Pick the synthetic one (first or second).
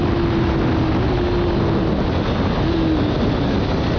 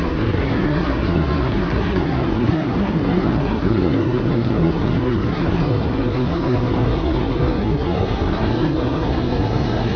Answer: second